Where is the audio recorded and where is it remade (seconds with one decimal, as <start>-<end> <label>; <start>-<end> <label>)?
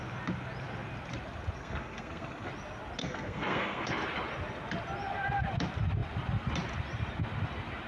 0.0-1.6 recorded; 1.6-2.5 remade; 2.5-3.0 recorded; 3.0-3.9 remade; 3.9-7.9 recorded